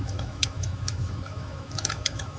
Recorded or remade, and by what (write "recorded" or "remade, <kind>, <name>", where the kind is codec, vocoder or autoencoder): remade, autoencoder, DAC-VAE